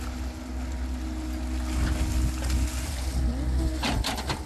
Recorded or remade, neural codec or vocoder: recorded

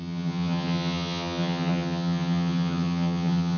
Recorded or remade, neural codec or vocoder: remade, vocoder, HiFi-GAN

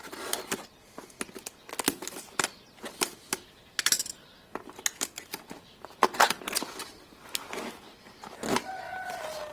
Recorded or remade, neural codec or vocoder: recorded